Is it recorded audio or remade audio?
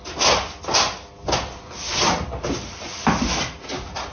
recorded